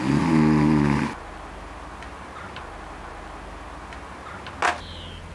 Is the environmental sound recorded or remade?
recorded